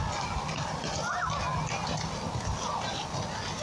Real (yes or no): yes